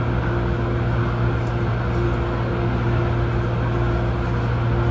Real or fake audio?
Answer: real